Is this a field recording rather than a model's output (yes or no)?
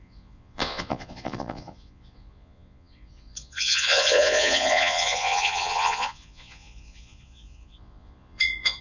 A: no